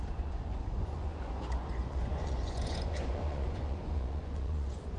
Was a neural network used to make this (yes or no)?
yes